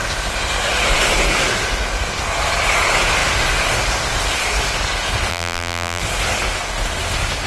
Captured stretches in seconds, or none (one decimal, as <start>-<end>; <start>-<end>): 0.0-5.3; 6.0-7.5